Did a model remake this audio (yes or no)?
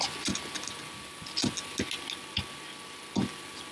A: no